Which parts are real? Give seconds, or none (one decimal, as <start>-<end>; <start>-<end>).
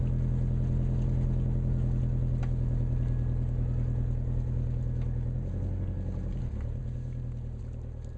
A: 0.0-8.2